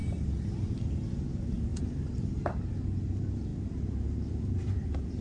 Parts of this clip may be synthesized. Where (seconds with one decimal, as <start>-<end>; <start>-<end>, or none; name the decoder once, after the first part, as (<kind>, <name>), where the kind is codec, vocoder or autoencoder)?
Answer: 1.7-2.7 (vocoder, BigVGAN v2); 3.5-5.2